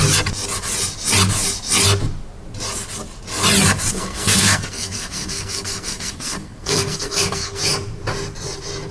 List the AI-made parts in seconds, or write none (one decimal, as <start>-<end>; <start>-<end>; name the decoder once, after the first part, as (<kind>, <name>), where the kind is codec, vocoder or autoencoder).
3.9-7.6 (codec, SNAC)